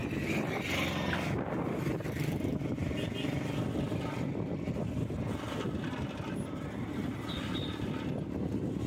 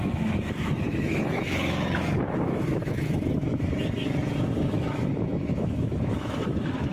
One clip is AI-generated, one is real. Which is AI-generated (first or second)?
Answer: second